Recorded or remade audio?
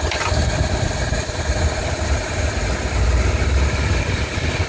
recorded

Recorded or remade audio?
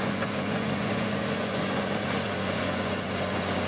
remade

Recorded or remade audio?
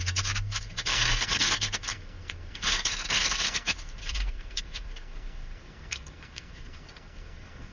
remade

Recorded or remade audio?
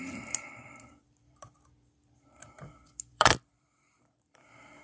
remade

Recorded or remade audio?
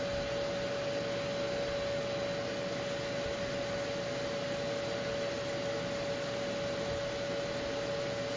recorded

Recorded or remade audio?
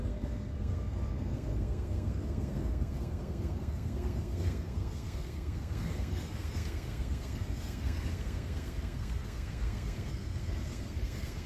remade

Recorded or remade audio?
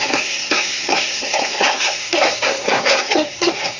remade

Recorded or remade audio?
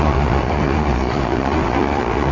remade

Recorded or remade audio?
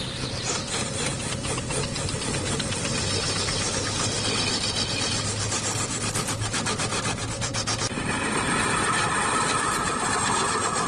recorded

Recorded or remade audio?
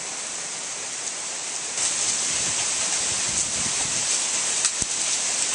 recorded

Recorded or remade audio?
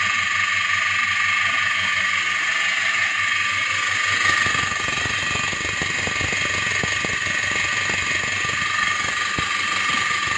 recorded